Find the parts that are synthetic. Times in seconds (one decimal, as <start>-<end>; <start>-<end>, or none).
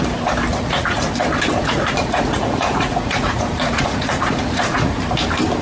0.5-1.0; 1.6-5.0